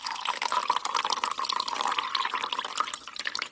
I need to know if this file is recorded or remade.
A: recorded